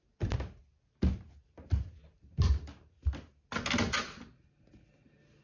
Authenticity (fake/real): real